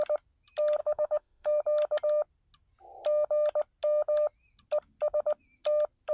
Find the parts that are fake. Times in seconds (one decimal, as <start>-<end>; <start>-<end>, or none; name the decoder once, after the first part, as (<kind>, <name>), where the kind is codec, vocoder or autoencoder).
0.8-1.6 (autoencoder, DAC-VAE)